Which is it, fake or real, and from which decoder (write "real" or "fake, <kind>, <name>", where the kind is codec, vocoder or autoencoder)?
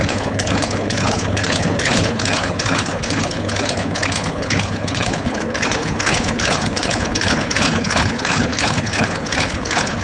fake, codec, HILCodec